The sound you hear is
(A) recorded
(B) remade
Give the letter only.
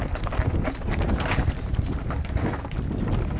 A